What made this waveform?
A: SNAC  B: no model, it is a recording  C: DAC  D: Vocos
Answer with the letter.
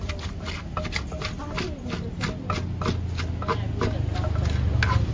B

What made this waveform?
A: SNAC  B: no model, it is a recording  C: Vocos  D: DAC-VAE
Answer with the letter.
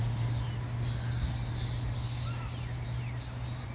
B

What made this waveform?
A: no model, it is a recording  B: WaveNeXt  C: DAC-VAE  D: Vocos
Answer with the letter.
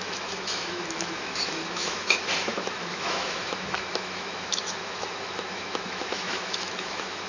C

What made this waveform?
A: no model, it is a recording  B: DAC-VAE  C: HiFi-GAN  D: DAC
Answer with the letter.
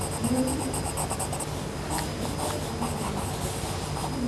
A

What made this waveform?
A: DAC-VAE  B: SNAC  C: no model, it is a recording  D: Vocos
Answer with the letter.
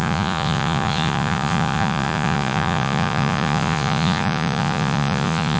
D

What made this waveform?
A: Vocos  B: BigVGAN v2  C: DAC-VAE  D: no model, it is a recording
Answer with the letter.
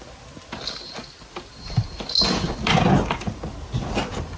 D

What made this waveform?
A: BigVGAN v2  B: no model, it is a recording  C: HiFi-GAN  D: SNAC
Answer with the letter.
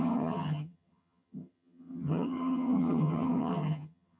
C